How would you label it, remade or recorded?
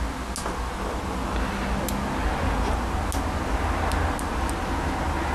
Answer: recorded